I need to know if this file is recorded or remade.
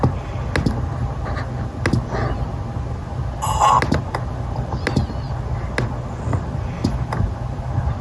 recorded